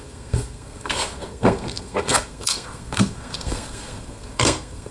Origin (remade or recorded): remade